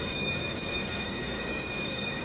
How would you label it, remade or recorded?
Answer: remade